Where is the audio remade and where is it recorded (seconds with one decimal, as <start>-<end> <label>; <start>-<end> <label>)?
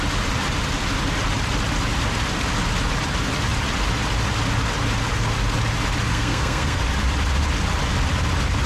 0.0-6.1 recorded; 6.1-6.8 remade; 6.8-8.7 recorded